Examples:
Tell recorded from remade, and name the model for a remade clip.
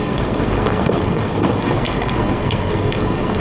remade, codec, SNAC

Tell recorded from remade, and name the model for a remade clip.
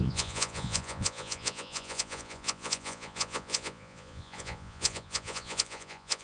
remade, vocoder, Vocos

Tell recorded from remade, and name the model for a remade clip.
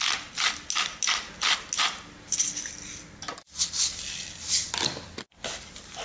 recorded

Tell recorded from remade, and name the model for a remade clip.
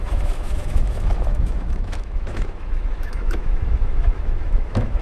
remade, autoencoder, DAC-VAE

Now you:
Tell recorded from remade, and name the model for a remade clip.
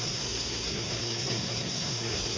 remade, codec, SNAC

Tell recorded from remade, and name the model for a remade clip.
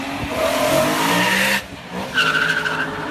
recorded